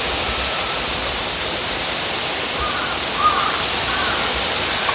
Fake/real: real